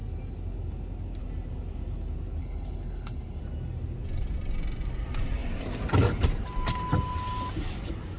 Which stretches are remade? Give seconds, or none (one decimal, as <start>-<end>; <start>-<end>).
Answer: 2.4-3.4